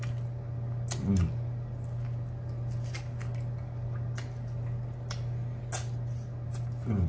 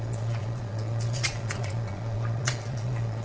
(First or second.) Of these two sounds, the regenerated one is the second